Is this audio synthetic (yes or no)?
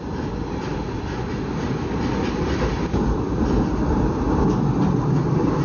no